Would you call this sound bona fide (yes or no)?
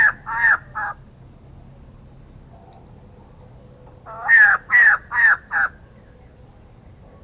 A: yes